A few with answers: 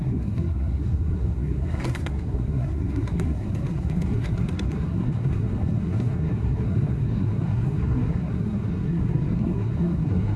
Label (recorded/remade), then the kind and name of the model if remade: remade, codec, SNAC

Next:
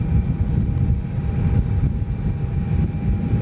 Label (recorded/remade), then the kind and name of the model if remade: remade, vocoder, BigVGAN v2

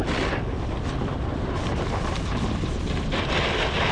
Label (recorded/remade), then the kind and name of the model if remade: recorded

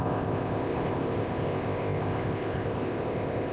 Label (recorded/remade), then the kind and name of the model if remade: remade, codec, ZipCodec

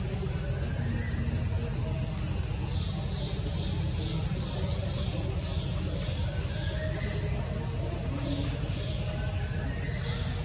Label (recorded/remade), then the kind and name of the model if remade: recorded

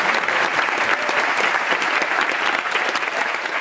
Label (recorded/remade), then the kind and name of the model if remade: remade, vocoder, BigVGAN v2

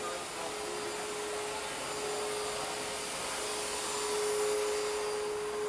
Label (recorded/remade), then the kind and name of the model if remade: recorded